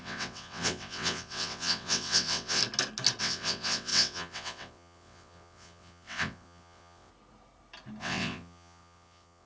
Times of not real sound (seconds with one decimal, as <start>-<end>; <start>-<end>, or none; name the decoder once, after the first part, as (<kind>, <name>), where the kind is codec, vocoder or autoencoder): 0.0-2.6 (vocoder, WaveNeXt); 3.2-7.1; 8.0-9.5